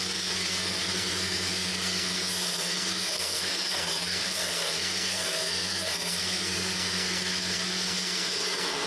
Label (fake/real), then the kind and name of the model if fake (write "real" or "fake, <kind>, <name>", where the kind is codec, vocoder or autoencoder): fake, codec, SNAC